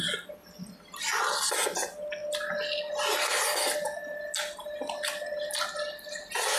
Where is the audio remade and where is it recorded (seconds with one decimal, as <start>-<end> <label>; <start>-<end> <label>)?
0.0-6.6 recorded